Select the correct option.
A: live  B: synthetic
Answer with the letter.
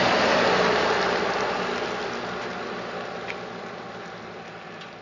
A